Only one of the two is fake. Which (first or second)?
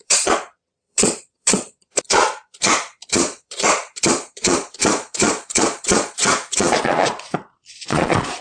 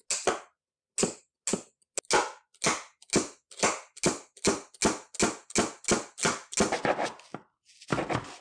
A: first